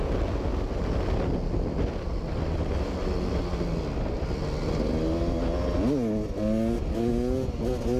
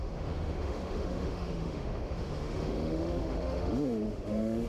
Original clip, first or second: first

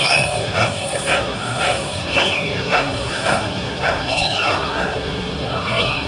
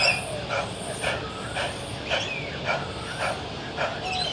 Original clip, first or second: second